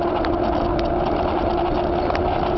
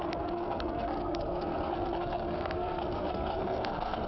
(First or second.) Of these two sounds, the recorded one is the first